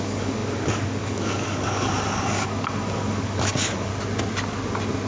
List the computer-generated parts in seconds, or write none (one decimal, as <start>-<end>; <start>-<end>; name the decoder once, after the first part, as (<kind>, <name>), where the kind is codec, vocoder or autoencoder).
0.0-3.9 (codec, DAC)